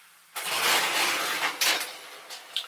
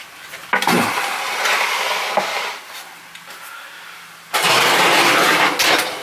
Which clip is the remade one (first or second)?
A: first